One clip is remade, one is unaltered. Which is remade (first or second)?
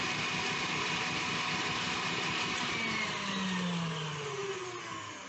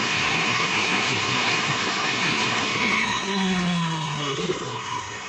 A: second